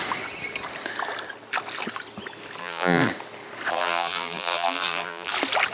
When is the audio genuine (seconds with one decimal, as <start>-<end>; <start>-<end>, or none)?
0.0-2.6; 3.1-3.7; 5.3-5.7